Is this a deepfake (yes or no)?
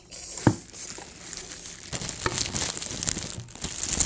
no